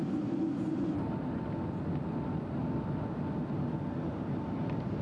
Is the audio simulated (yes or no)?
no